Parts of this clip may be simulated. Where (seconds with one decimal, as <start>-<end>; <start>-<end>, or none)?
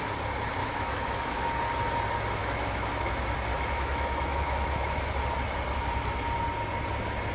0.6-1.5; 2.4-3.1; 3.5-5.1